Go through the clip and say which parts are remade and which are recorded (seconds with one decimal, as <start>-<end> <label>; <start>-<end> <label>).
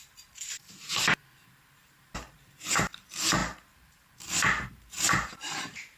0.0-6.0 remade